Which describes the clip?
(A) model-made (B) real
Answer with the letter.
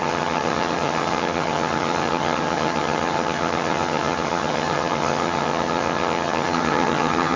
A